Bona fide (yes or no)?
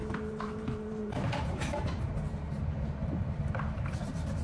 no